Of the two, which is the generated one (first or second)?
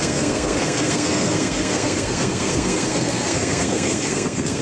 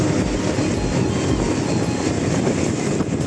first